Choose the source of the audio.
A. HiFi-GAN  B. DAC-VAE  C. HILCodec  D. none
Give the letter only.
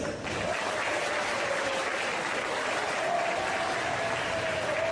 D